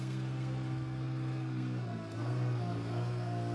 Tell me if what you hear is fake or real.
fake